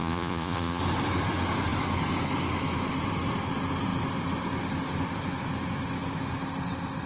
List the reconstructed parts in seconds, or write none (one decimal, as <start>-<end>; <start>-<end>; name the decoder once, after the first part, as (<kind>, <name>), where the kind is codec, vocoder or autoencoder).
0.0-0.8 (vocoder, Vocos)